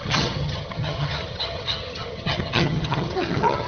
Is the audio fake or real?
fake